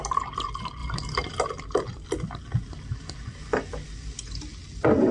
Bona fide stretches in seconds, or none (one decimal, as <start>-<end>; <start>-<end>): 0.0-5.1